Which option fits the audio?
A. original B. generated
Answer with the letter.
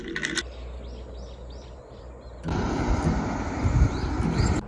A